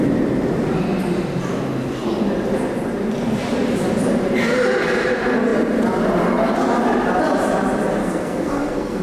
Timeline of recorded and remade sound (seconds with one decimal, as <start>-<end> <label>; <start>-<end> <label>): 0.0-8.0 recorded; 8.0-9.0 remade